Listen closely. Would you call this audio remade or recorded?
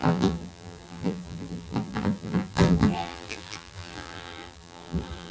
remade